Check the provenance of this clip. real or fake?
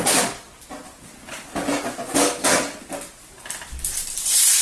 real